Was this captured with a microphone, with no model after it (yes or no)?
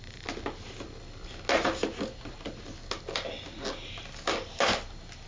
yes